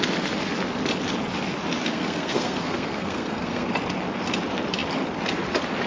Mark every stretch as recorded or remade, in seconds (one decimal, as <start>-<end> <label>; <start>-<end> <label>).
0.0-1.9 recorded; 1.9-3.7 remade; 3.7-5.9 recorded